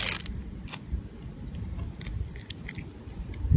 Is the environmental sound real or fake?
real